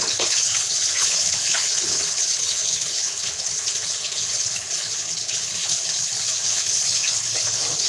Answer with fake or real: fake